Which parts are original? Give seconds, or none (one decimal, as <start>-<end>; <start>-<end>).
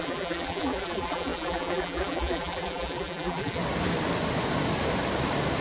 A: 3.6-5.6